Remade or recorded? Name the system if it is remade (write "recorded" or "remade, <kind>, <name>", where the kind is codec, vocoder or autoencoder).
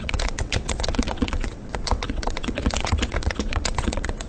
remade, vocoder, WaveNeXt